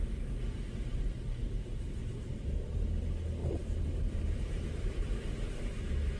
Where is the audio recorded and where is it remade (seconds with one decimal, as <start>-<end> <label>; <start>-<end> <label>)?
0.0-1.4 recorded; 1.4-2.3 remade; 2.3-3.4 recorded; 3.4-5.6 remade; 5.6-6.2 recorded